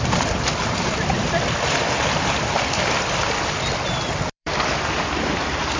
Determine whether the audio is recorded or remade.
remade